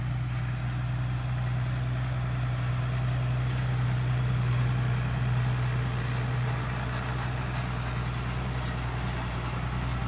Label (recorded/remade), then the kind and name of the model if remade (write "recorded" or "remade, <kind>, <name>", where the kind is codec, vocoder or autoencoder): recorded